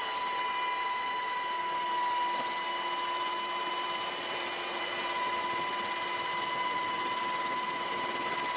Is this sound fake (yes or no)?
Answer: no